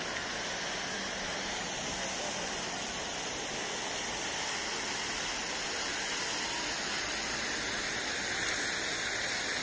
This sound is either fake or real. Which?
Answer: real